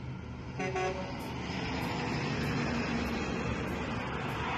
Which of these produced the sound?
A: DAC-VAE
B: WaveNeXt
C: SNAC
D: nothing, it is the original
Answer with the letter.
D